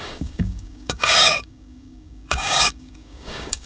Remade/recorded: remade